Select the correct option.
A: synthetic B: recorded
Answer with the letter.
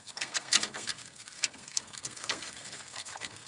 A